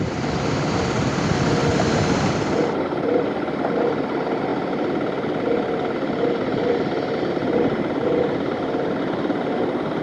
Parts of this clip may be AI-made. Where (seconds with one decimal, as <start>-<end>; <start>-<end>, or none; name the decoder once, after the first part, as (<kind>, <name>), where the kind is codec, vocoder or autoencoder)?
none